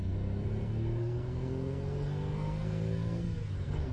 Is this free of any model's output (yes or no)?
no